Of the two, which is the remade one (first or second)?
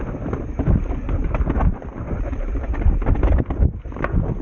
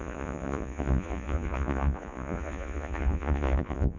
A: second